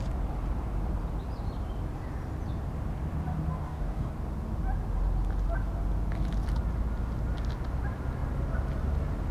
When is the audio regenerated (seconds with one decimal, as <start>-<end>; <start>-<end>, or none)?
3.6-4.1